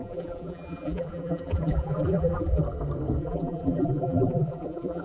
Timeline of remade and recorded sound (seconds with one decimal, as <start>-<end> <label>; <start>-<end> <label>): 0.0-2.6 remade; 2.6-3.2 recorded; 3.2-5.0 remade